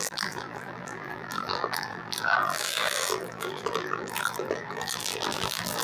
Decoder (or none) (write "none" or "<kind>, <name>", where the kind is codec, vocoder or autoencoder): vocoder, BigVGAN v2